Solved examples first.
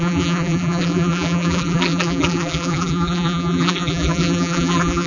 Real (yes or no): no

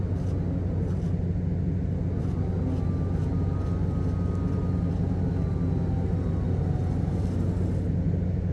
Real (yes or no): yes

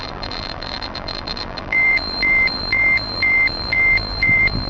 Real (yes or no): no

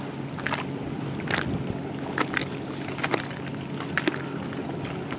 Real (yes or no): yes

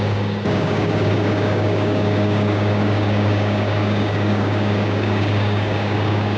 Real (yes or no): no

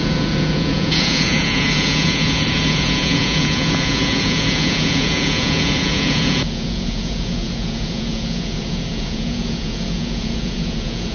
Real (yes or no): no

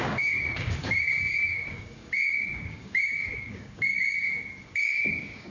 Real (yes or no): no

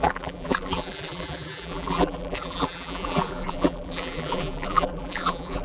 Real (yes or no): no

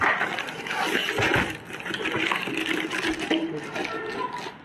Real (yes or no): yes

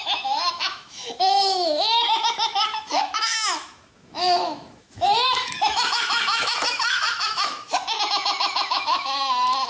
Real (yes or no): no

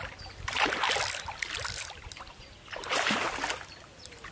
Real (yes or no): no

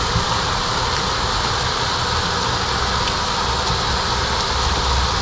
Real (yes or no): yes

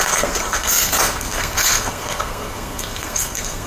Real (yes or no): no